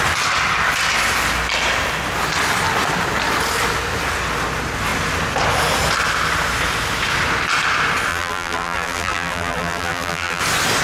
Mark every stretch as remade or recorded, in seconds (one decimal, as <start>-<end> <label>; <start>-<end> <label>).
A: 0.0-8.1 recorded; 8.1-10.4 remade; 10.4-10.8 recorded